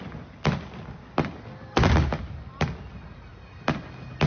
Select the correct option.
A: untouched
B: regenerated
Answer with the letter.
A